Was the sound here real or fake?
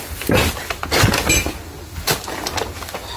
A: real